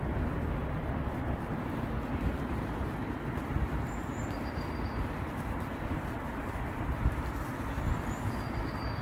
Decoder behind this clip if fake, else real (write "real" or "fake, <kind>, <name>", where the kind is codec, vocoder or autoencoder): real